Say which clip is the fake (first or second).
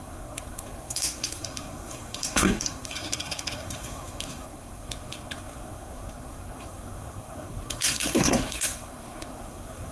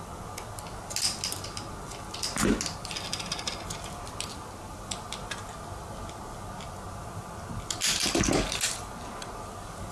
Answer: first